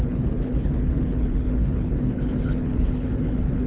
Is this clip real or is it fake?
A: fake